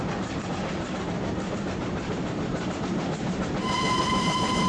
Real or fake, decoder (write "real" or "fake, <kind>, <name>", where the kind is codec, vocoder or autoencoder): fake, vocoder, BigVGAN v2